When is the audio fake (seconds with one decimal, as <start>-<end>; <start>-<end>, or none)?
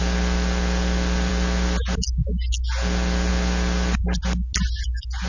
none